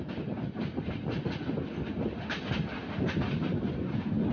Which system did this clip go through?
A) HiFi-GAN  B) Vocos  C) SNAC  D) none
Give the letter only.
D